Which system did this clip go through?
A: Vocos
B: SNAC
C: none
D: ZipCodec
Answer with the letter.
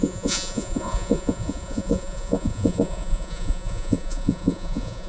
A